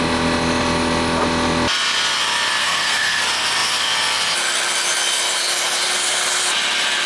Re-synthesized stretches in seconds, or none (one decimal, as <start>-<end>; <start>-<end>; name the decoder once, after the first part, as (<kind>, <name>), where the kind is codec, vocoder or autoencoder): 2.6-3.2 (codec, SNAC)